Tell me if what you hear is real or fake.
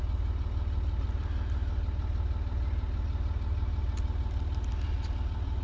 real